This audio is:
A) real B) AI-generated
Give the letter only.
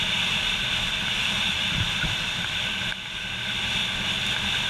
A